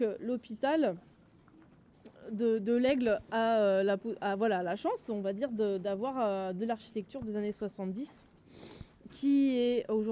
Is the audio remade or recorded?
recorded